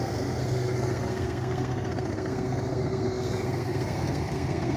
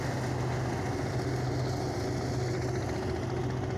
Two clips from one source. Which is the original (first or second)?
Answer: second